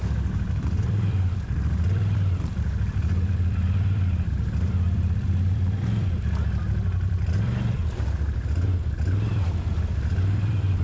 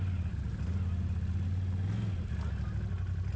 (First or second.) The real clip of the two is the second